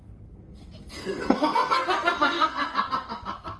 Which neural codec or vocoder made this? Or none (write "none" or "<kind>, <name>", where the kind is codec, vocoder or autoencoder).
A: codec, SNAC